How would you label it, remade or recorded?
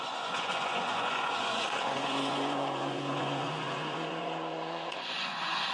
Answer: remade